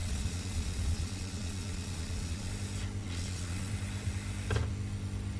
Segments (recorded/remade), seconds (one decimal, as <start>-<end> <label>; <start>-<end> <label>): 0.0-2.5 remade; 2.5-3.0 recorded; 3.0-3.7 remade; 3.7-5.4 recorded